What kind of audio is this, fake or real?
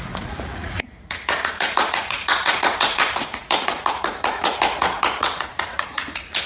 fake